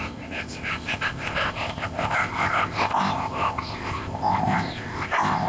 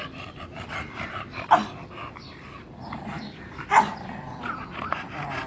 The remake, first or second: first